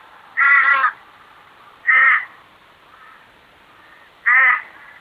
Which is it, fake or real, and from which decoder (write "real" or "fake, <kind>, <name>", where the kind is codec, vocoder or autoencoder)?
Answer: fake, vocoder, BigVGAN v2